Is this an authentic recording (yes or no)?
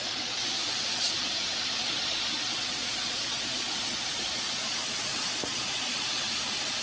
no